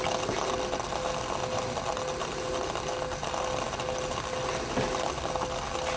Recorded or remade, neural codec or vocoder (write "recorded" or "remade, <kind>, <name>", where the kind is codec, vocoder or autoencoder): recorded